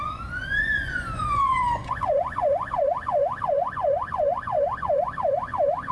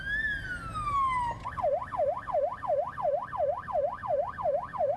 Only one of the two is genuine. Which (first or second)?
second